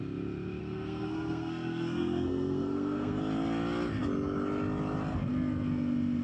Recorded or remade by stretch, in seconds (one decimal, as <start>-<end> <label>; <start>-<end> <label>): 0.0-0.6 recorded; 0.6-3.2 remade; 3.2-6.2 recorded